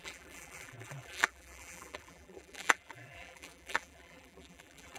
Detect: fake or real fake